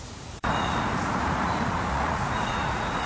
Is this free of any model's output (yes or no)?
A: no